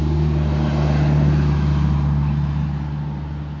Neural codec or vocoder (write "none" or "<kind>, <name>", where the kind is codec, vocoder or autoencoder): none